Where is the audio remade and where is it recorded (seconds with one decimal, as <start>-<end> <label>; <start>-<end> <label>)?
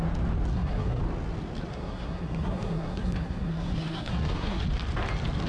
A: 0.0-0.5 recorded; 0.5-1.0 remade; 1.0-1.7 recorded; 1.7-4.6 remade; 4.6-5.5 recorded